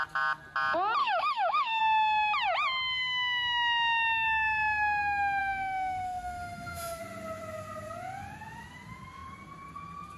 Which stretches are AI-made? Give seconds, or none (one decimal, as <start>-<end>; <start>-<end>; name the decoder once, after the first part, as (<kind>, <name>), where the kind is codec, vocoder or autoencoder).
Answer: 1.0-1.8 (autoencoder, DAC-VAE); 5.4-7.0